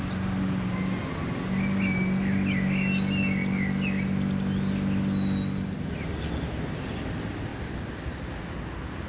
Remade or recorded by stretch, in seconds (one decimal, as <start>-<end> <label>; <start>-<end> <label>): 0.0-9.1 recorded